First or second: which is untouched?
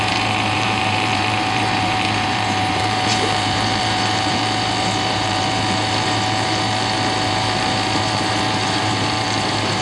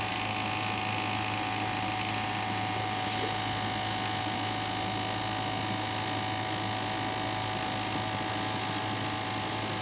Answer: second